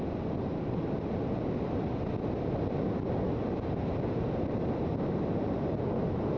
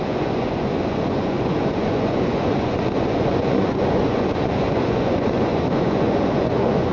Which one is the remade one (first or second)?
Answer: second